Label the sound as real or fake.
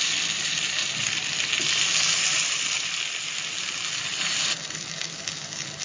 real